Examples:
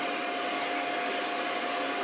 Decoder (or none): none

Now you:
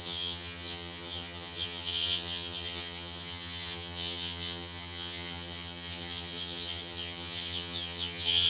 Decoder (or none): vocoder, HiFi-GAN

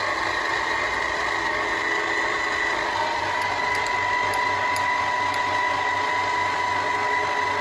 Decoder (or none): none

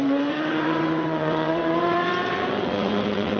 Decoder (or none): vocoder, WaveNeXt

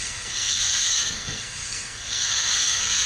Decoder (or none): codec, SNAC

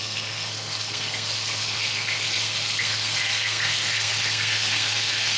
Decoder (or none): codec, SNAC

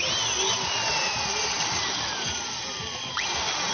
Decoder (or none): none